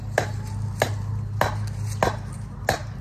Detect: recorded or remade recorded